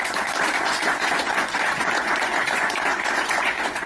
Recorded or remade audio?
remade